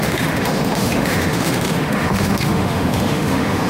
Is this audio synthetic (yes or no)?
yes